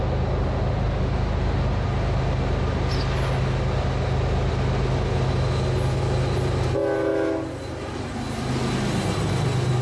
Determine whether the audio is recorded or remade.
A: recorded